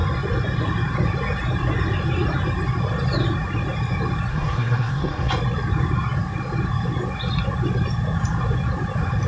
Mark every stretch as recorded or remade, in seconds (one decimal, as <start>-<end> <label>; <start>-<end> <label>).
0.0-4.3 recorded; 4.3-5.3 remade; 5.3-9.3 recorded